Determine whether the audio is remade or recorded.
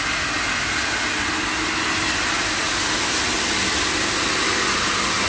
recorded